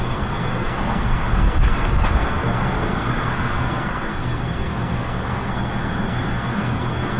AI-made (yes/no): yes